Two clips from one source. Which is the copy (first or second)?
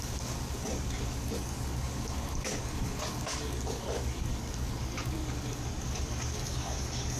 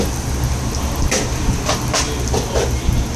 first